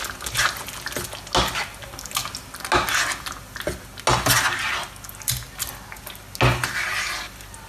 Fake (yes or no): no